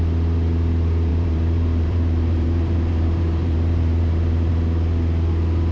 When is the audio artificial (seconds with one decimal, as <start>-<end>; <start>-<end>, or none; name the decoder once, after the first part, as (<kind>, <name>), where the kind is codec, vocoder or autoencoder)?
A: 1.1-4.5 (vocoder, BigVGAN v2)